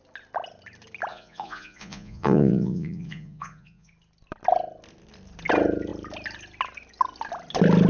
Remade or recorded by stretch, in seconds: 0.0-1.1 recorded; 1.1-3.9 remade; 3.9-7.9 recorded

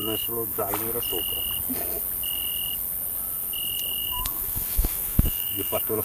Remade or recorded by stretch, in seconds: 0.0-0.7 remade; 0.7-4.0 recorded; 4.0-6.0 remade

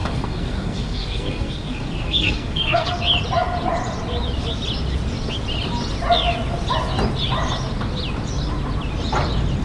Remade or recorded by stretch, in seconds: 0.0-3.0 remade; 3.0-9.6 recorded

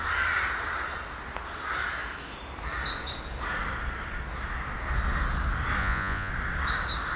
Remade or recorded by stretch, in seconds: 0.0-5.8 recorded; 5.8-6.3 remade; 6.3-7.2 recorded

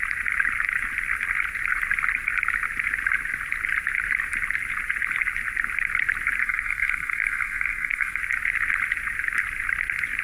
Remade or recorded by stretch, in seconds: 0.0-6.4 recorded; 6.4-8.2 remade; 8.2-10.2 recorded

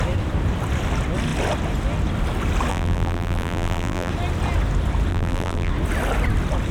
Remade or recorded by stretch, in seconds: 0.0-2.7 recorded; 2.7-4.1 remade; 4.1-5.1 recorded; 5.1-5.7 remade; 5.7-6.7 recorded

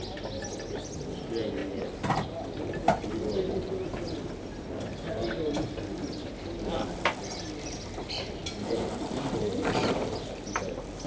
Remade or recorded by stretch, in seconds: 0.0-1.6 recorded; 1.6-2.6 remade; 2.6-8.4 recorded; 8.4-10.1 remade; 10.1-11.1 recorded